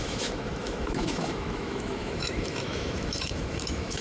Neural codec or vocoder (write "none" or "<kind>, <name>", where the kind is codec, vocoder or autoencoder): autoencoder, DAC-VAE